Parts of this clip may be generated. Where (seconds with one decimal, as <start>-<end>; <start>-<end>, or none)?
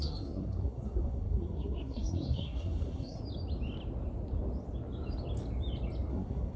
0.0-3.2; 6.1-6.6